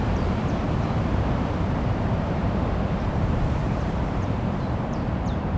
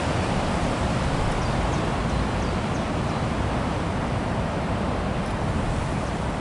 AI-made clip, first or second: first